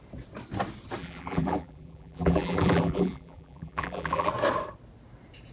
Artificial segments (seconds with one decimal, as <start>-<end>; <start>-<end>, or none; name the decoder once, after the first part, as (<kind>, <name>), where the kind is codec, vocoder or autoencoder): 1.0-4.3 (vocoder, BigVGAN v2)